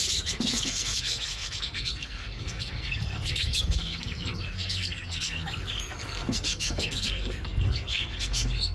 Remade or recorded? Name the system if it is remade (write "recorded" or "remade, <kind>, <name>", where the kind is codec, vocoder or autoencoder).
remade, codec, SNAC